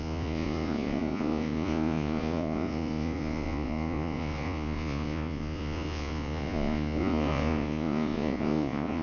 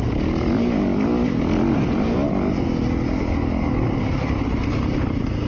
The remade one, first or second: first